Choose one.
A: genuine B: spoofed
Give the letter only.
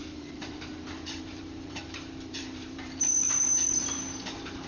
B